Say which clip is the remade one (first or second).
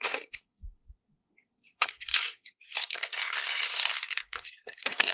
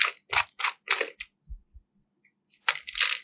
first